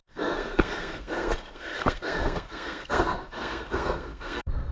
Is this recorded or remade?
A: remade